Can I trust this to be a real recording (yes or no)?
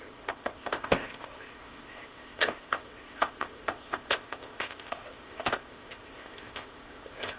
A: no